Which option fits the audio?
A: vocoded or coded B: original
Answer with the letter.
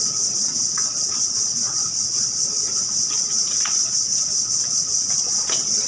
A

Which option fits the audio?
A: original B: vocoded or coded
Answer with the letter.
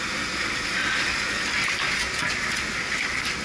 A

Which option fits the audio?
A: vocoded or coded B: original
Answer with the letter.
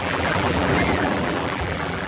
A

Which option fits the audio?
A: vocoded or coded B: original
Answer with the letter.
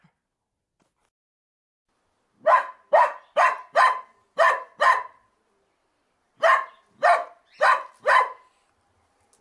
B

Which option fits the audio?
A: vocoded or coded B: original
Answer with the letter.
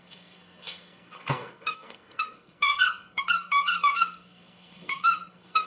A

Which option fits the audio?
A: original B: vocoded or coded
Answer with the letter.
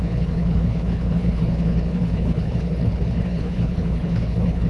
B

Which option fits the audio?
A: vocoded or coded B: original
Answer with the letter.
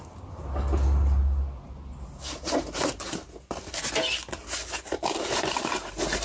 B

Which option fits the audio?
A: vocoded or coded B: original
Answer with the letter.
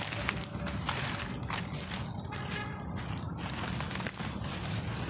B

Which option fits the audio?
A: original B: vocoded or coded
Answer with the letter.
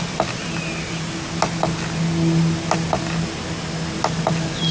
A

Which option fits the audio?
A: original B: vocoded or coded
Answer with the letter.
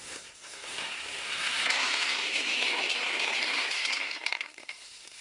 B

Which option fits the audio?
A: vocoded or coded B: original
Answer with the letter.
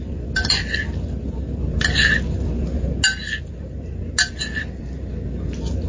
B